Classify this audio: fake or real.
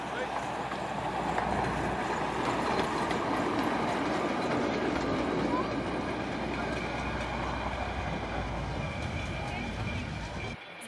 real